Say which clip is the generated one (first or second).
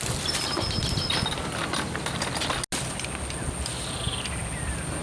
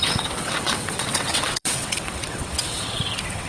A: second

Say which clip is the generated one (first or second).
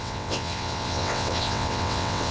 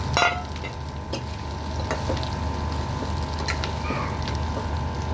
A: first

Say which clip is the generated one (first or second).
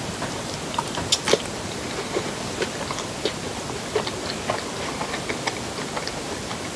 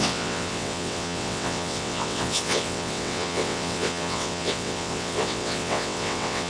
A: second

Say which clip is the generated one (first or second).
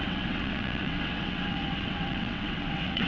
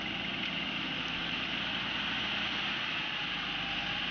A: first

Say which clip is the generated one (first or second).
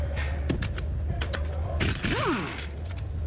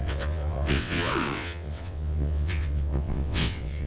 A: second